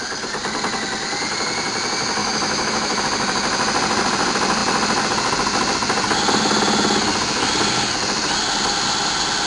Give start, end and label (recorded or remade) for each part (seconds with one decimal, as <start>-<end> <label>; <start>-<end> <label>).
0.0-2.2 recorded; 2.2-3.0 remade; 3.0-9.5 recorded